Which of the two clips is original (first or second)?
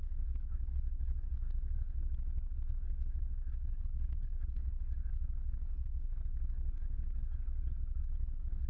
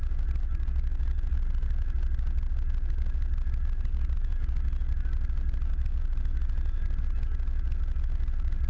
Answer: second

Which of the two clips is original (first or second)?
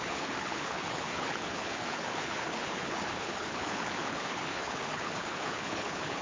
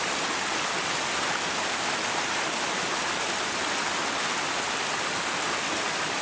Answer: second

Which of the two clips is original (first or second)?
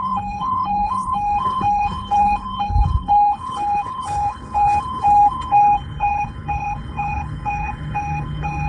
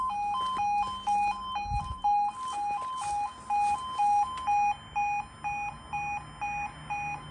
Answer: second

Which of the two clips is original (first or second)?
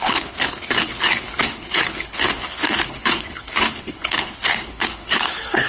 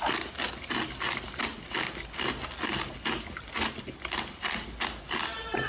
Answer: second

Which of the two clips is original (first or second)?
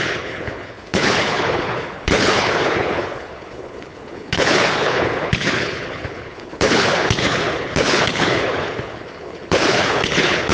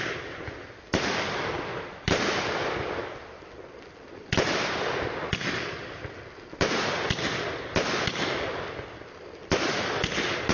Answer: second